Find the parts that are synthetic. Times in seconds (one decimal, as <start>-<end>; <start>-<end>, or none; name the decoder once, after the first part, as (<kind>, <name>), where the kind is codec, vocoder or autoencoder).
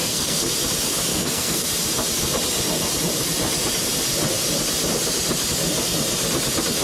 0.0-0.5 (codec, SNAC); 1.1-1.7